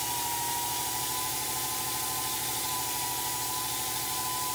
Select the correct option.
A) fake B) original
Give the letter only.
B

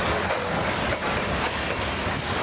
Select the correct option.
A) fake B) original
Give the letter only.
B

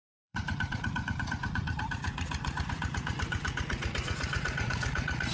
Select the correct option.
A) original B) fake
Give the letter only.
B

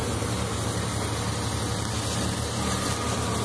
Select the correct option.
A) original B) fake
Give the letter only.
A